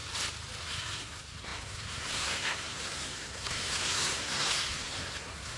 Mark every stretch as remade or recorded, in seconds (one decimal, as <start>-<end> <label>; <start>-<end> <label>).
0.0-0.6 recorded; 0.6-5.6 remade